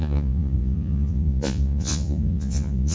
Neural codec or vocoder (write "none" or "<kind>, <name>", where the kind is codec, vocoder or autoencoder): vocoder, Vocos